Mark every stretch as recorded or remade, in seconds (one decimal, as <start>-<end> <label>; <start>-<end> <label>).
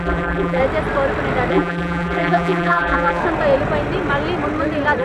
0.0-0.6 remade; 0.6-1.5 recorded; 1.5-3.2 remade; 3.2-5.0 recorded